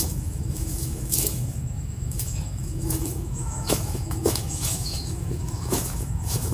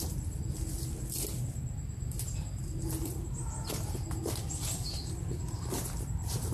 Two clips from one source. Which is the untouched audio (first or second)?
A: second